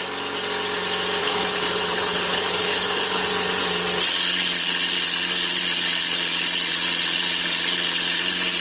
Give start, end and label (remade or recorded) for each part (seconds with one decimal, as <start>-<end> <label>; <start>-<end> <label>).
0.0-1.2 recorded; 1.2-3.3 remade; 3.3-8.6 recorded